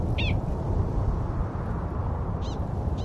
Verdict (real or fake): real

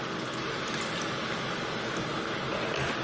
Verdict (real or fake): real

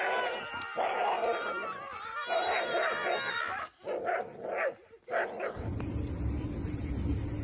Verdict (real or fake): real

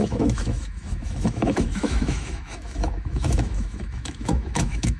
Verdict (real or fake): fake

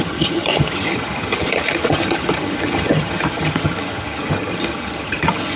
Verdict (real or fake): fake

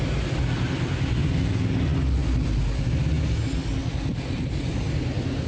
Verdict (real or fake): real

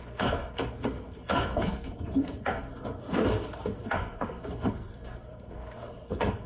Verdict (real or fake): fake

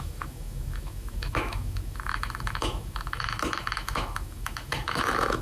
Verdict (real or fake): fake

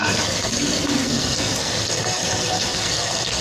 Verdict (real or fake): fake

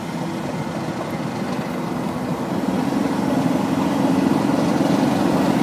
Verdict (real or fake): real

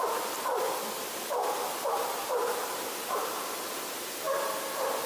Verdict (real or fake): real